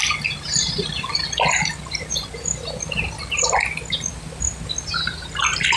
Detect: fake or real real